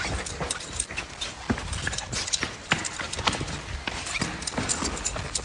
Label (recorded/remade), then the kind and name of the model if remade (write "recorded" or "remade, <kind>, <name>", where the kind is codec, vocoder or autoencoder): recorded